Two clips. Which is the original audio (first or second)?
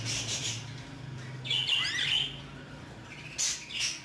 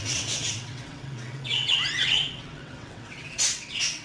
first